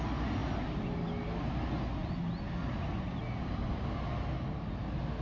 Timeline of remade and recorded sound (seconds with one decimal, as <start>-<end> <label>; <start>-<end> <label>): 0.0-5.2 recorded